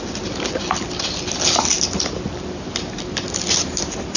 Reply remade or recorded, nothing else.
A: recorded